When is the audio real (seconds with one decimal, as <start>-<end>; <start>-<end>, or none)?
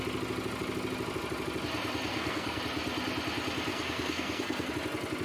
0.0-2.1; 2.6-3.7; 4.7-5.2